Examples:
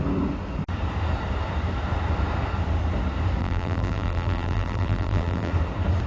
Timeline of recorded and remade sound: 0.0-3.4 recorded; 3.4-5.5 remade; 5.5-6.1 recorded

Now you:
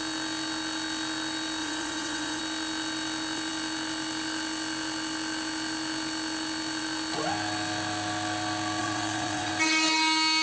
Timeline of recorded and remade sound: 0.0-1.6 recorded; 1.6-2.4 remade; 2.4-8.8 recorded; 8.8-9.5 remade; 9.5-10.4 recorded

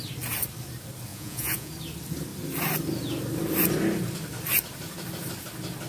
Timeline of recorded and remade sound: 0.0-1.1 recorded; 1.1-1.7 remade; 1.7-5.9 recorded